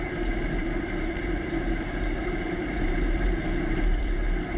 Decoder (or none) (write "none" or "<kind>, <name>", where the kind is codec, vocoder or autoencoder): vocoder, BigVGAN v2